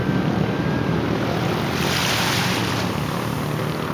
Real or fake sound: real